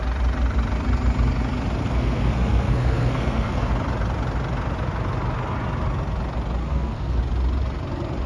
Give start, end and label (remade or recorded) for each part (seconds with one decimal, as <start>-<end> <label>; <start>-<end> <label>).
0.0-1.8 recorded; 1.8-3.7 remade; 3.7-6.6 recorded; 6.6-7.2 remade; 7.2-8.3 recorded